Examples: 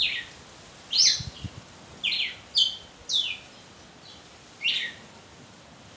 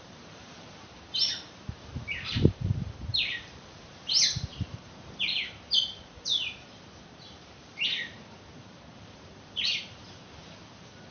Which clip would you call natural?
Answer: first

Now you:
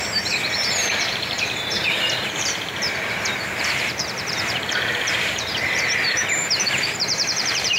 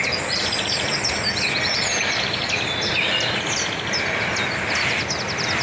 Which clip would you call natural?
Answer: second